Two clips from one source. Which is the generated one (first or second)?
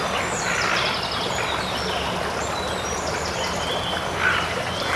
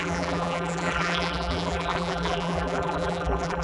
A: second